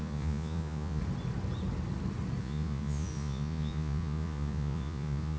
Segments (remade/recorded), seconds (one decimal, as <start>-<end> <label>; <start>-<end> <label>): 0.0-1.0 remade; 1.0-2.4 recorded; 2.4-5.4 remade